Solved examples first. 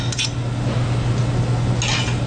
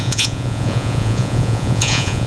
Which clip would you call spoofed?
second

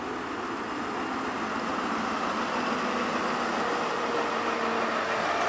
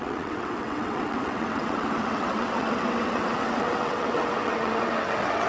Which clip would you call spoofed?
second